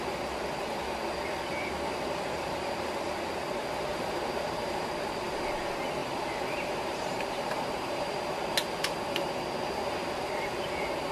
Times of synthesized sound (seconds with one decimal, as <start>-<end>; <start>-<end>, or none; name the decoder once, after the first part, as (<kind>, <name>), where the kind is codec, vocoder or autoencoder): 3.9-4.7 (vocoder, BigVGAN v2); 6.0-8.2